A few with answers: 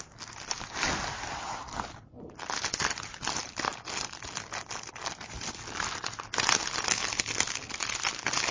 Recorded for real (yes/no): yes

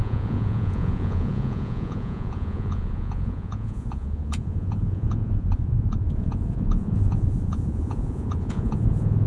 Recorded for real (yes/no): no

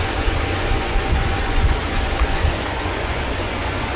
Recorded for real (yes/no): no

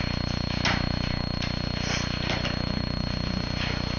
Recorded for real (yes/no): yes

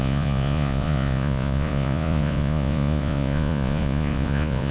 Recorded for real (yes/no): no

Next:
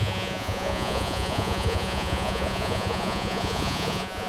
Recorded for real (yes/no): no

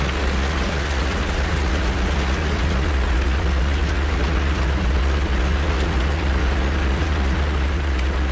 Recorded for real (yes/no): no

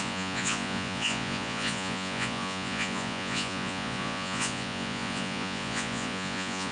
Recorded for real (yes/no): no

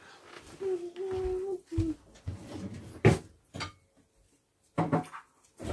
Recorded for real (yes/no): yes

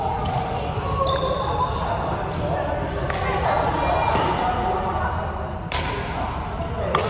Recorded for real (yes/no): yes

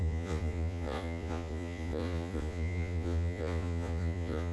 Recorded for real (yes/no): no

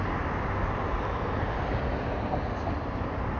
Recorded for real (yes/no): yes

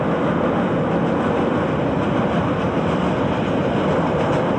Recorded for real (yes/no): yes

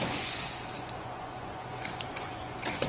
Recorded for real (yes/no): no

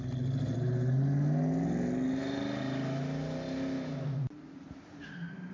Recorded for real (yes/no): yes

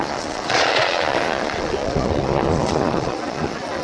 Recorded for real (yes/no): no